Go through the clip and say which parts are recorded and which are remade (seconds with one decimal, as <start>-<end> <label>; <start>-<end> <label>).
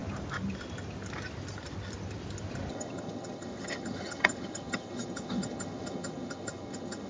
0.0-2.7 recorded; 2.7-7.1 remade